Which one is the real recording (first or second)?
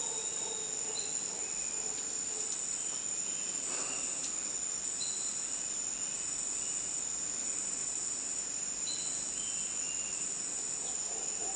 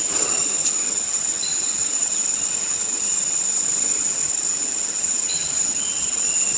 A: first